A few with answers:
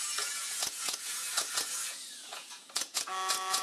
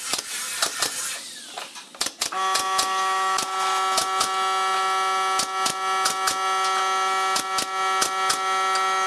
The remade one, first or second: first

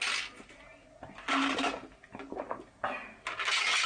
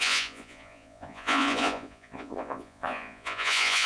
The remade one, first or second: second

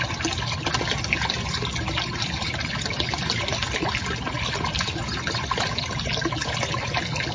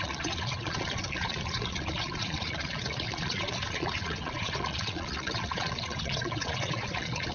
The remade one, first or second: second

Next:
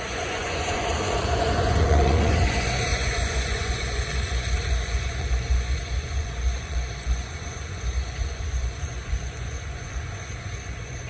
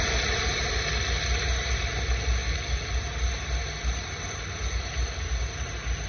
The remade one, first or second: first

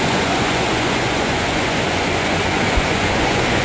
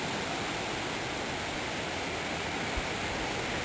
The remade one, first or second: first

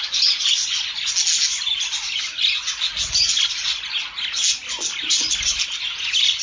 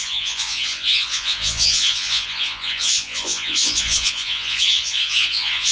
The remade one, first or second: second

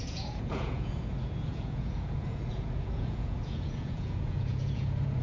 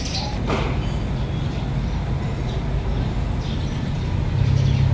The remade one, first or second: first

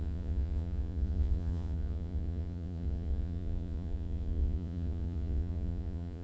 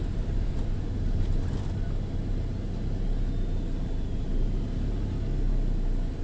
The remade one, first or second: first